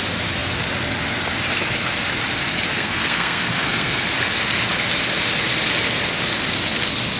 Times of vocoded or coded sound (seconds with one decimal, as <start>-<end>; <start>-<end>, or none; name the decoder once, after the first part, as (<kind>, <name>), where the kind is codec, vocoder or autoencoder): 2.7-4.0 (codec, SNAC)